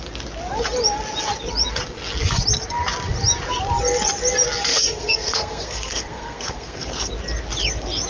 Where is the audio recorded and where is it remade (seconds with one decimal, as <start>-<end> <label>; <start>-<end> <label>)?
0.0-4.7 recorded; 4.7-7.1 remade; 7.1-8.1 recorded